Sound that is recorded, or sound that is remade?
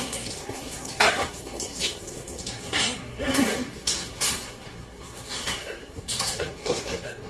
remade